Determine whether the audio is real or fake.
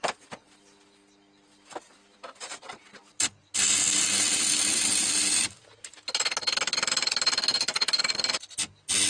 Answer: real